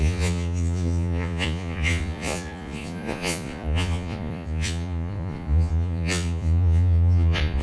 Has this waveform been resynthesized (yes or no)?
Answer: yes